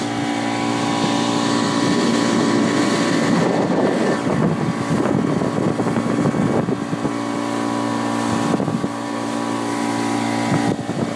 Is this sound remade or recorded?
recorded